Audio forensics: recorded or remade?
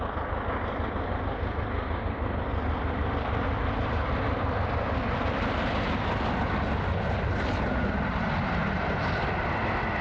recorded